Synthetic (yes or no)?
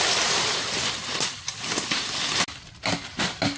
no